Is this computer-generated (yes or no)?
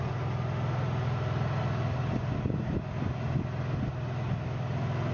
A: no